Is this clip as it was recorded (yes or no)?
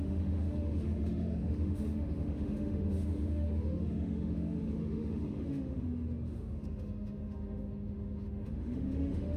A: no